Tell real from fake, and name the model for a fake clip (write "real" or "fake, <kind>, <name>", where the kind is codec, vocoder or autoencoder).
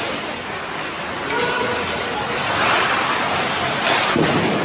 real